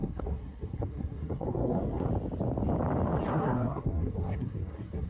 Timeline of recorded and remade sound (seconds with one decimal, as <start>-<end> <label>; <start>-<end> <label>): 0.0-2.1 remade; 2.1-3.3 recorded; 3.3-5.1 remade

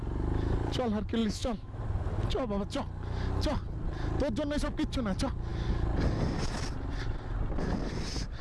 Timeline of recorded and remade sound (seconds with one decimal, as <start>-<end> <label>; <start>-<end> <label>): 0.0-1.2 recorded; 1.2-1.8 remade; 1.8-8.4 recorded

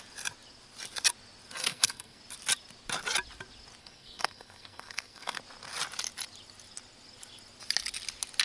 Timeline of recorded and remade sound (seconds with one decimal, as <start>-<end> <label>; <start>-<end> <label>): 0.0-1.6 recorded; 1.6-2.2 remade; 2.2-3.8 recorded; 3.8-5.4 remade; 5.4-8.4 recorded

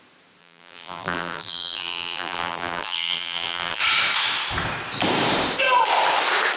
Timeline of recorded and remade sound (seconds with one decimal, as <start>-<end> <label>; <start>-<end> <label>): 0.0-0.4 recorded; 0.4-3.8 remade; 3.8-6.6 recorded

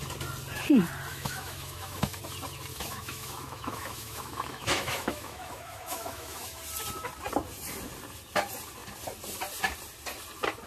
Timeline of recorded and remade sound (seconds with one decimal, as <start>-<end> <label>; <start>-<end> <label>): 0.0-1.1 recorded; 1.1-2.2 remade; 2.2-2.7 recorded; 2.7-6.6 remade; 6.6-10.7 recorded